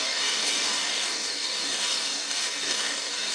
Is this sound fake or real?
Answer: fake